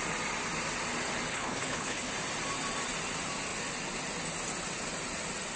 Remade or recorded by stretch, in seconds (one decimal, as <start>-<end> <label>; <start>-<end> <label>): 0.0-1.3 recorded; 1.3-2.1 remade; 2.1-5.6 recorded